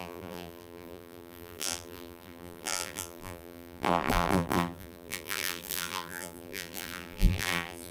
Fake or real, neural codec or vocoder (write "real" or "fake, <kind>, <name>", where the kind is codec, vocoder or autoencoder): fake, vocoder, BigVGAN v2